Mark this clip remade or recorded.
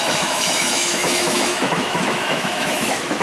remade